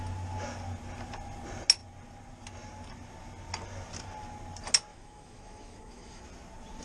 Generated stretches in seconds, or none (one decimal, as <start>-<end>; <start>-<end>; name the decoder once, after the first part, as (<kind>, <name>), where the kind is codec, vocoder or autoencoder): 4.9-6.2 (autoencoder, DAC-VAE)